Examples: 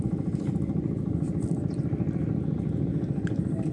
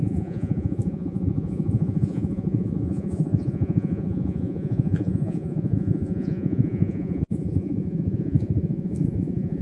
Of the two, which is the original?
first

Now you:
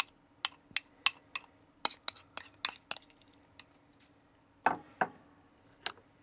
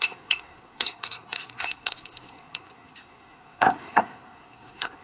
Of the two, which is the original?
first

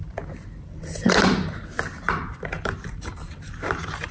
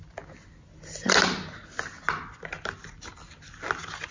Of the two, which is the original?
second